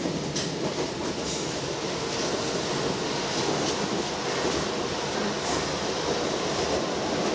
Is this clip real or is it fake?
real